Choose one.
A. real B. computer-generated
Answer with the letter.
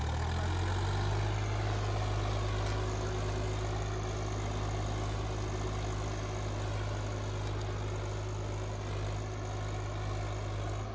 A